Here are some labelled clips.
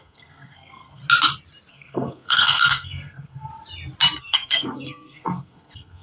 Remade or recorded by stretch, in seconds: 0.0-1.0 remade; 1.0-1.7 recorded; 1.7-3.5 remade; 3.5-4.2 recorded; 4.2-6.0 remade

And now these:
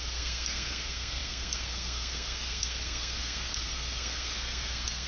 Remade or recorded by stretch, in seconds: 0.0-5.1 remade

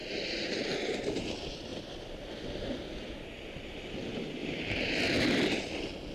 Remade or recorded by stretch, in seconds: 0.0-4.4 recorded; 4.4-5.0 remade; 5.0-6.1 recorded

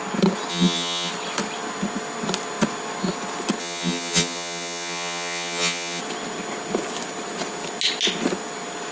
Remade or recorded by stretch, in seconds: 0.0-0.5 recorded; 0.5-1.1 remade; 1.1-3.6 recorded; 3.6-6.0 remade; 6.0-8.9 recorded

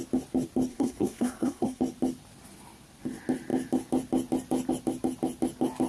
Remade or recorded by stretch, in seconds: 0.0-0.7 recorded; 0.7-1.8 remade; 1.8-5.9 recorded

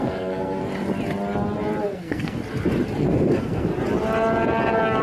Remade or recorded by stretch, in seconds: 0.0-0.6 remade; 0.6-1.8 recorded; 1.8-2.4 remade; 2.4-3.0 recorded; 3.0-3.7 remade; 3.7-5.0 recorded

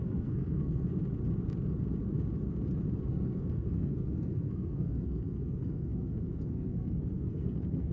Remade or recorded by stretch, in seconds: 0.0-0.9 remade; 0.9-3.0 recorded; 3.0-7.9 remade

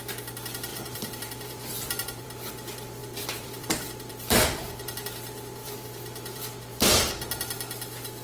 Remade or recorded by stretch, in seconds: 0.0-0.7 recorded; 0.7-2.5 remade; 2.5-3.0 recorded; 3.0-4.7 remade; 4.7-5.6 recorded; 5.6-6.5 remade; 6.5-8.2 recorded